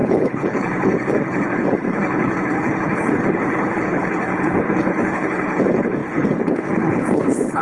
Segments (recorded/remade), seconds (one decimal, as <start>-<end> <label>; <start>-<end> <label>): 0.0-7.6 remade